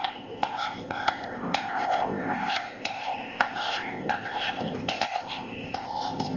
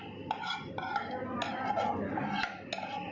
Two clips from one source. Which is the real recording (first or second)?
second